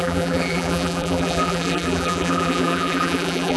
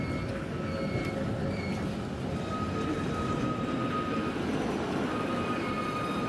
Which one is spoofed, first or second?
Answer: first